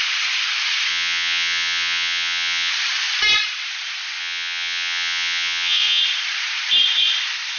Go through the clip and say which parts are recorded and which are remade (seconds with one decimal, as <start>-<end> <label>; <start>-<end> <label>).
0.0-0.9 recorded; 0.9-2.7 remade; 2.7-4.2 recorded; 4.2-6.0 remade; 6.0-7.6 recorded